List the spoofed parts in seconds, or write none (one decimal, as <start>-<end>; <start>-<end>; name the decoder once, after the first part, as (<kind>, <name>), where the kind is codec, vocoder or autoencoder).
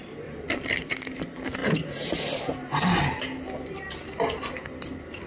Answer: 0.0-5.3 (vocoder, BigVGAN v2)